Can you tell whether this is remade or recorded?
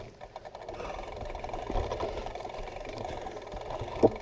recorded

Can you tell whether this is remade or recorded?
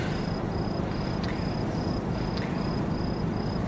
recorded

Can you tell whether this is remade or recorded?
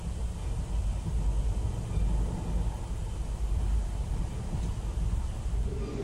recorded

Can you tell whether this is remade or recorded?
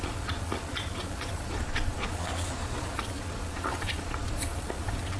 remade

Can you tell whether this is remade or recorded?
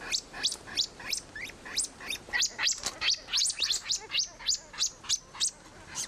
recorded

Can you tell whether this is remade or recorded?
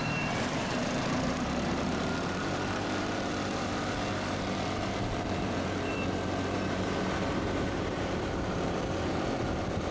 remade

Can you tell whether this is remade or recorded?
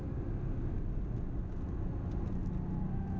recorded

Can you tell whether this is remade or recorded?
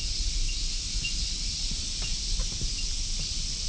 recorded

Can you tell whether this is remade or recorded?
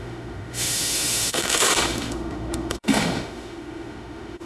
remade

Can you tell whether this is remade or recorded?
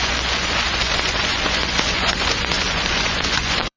remade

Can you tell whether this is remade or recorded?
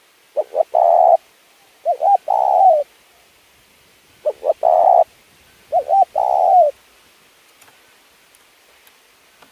recorded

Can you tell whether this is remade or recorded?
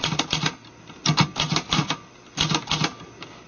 recorded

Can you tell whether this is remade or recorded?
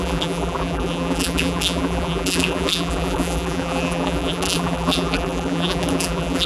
remade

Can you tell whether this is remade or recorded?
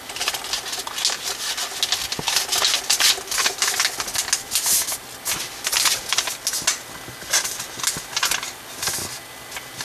recorded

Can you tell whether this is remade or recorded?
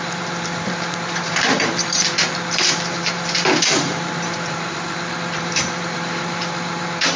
remade